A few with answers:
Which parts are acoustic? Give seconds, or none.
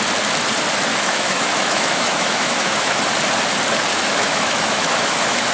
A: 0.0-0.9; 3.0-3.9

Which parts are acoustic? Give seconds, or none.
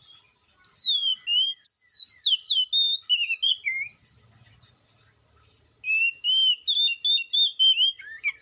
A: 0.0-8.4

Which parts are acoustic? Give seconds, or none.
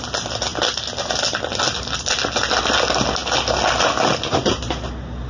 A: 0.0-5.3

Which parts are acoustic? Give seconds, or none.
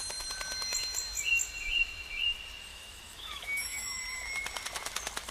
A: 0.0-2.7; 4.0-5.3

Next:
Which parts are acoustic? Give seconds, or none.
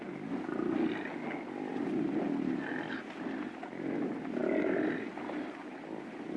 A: 0.0-6.4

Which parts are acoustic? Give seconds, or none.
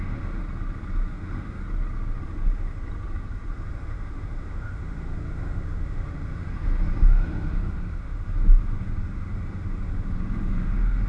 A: 0.4-1.1; 1.6-2.2; 2.8-3.5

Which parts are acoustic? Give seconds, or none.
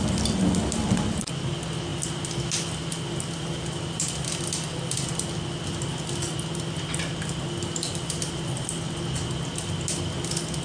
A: 0.0-10.6